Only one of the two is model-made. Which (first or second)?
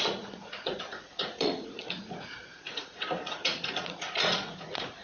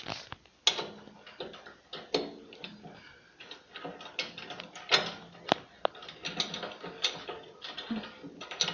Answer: first